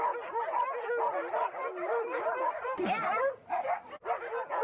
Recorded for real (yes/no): yes